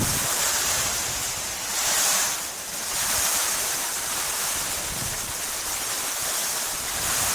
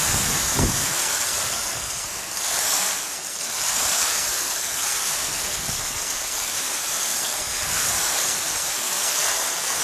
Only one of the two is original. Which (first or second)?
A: first